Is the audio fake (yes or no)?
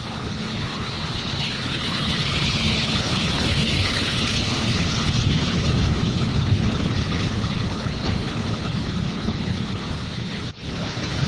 yes